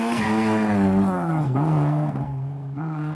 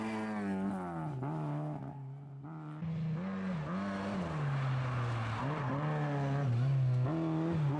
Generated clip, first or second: first